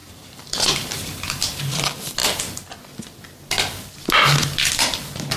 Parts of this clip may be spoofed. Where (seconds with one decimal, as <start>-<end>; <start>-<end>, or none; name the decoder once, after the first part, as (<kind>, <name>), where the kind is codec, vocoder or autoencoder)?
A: 0.0-1.6 (vocoder, BigVGAN v2)